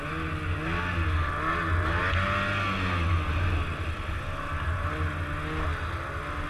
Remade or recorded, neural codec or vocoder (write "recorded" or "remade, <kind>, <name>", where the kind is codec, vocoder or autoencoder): recorded